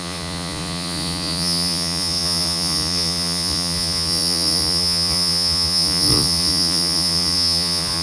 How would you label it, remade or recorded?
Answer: remade